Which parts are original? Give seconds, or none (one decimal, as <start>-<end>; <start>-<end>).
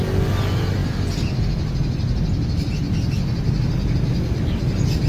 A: 0.0-5.1